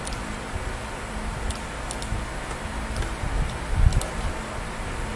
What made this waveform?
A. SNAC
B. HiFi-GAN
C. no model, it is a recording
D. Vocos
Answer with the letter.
C